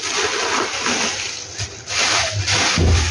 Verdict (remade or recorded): recorded